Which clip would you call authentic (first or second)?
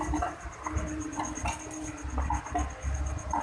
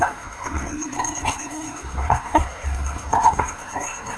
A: first